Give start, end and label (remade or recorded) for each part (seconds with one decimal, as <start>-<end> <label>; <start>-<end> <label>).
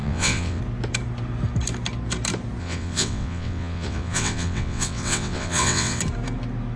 0.0-0.6 remade; 0.6-2.6 recorded; 2.6-6.0 remade; 6.0-6.8 recorded